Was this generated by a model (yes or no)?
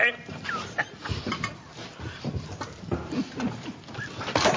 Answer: no